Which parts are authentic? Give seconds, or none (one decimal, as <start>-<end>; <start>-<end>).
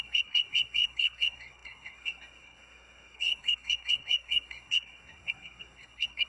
none